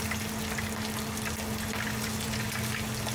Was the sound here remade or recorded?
recorded